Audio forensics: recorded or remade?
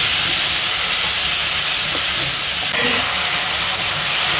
recorded